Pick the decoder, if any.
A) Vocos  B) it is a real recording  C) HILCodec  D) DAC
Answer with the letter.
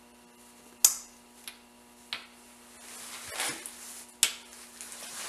B